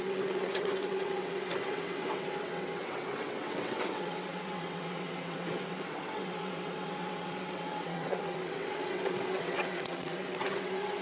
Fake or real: fake